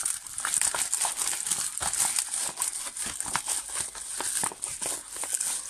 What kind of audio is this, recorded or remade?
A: recorded